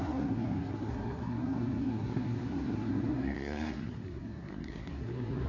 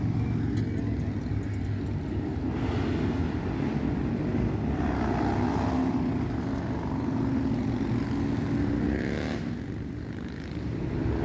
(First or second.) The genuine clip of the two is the second